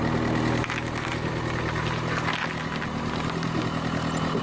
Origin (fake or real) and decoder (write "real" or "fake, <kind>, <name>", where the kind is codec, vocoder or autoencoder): real